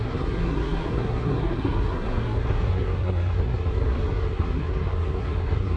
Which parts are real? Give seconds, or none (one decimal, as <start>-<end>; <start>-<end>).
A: none